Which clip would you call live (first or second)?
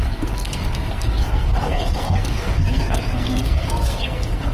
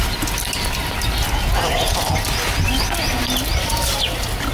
second